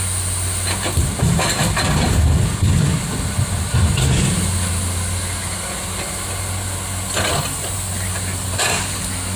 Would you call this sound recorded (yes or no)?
yes